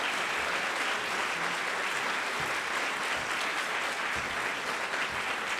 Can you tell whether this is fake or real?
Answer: real